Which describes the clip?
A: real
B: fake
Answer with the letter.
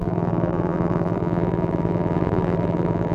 B